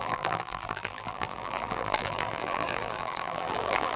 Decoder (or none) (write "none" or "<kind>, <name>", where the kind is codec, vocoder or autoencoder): vocoder, BigVGAN v2